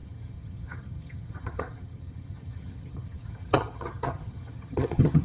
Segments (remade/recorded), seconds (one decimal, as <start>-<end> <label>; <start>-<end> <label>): 0.0-5.2 remade